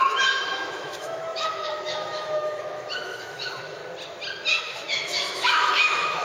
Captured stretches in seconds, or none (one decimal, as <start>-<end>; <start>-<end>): 3.8-4.6

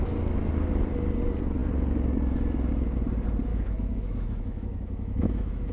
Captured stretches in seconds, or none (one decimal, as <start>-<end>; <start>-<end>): 0.0-3.5

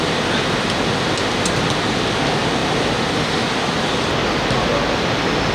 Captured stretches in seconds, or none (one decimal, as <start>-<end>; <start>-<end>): 0.0-5.5

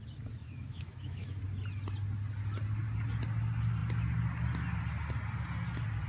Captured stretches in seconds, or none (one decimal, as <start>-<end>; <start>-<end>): 0.0-0.4; 1.4-6.1

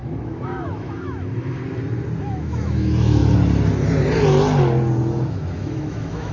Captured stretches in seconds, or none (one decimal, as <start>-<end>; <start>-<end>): 1.6-2.2; 3.2-5.3